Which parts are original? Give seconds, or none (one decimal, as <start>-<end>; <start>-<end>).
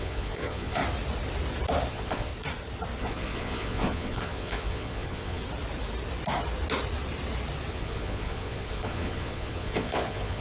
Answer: 0.8-1.9; 2.3-3.0; 5.4-7.7